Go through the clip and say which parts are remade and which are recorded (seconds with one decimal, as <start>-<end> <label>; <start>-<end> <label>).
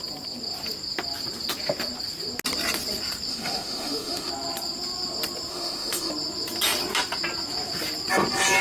0.0-3.3 recorded; 3.3-4.3 remade; 4.3-5.5 recorded; 5.5-6.1 remade; 6.1-8.6 recorded